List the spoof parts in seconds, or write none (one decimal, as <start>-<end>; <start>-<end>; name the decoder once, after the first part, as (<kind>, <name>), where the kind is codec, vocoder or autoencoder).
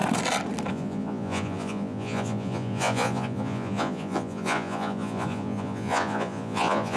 0.7-7.0 (vocoder, Vocos)